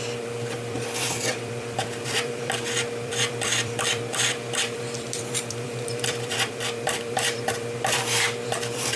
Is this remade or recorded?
remade